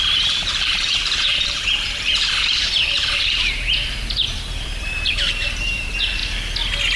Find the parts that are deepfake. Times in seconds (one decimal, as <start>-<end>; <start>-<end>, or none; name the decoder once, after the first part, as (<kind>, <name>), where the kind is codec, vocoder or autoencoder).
0.0-6.2 (vocoder, BigVGAN v2)

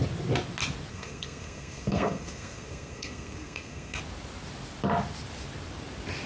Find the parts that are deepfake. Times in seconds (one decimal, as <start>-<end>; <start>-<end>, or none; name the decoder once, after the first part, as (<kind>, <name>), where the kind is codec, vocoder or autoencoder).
0.9-4.0 (codec, SNAC)

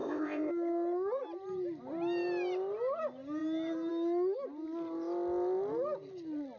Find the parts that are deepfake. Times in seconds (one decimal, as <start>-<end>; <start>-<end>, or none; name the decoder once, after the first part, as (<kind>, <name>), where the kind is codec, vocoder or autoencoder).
0.0-0.5 (codec, ZipCodec)

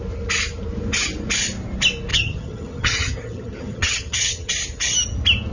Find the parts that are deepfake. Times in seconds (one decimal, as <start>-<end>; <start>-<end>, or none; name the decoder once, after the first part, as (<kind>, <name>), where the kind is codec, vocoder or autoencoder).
2.1-4.5 (vocoder, HiFi-GAN)

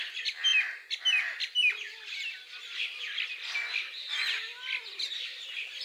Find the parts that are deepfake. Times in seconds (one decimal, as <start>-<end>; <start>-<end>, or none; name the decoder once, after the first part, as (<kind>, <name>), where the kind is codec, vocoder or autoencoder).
none

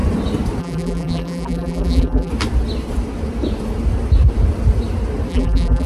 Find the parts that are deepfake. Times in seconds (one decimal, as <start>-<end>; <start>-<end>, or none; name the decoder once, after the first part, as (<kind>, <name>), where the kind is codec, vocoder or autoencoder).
0.6-2.3 (vocoder, BigVGAN v2); 5.3-5.9

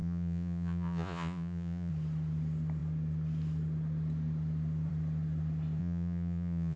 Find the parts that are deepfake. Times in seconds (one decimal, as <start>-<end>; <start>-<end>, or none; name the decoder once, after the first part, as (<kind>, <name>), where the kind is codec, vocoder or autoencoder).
0.0-1.9 (vocoder, Vocos); 5.8-6.8